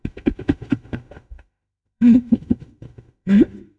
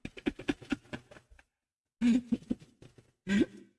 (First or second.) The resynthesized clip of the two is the first